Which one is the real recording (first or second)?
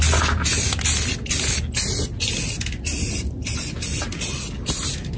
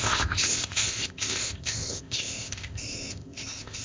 first